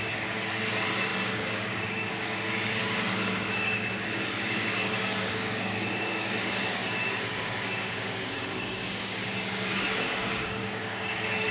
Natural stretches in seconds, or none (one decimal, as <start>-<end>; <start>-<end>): none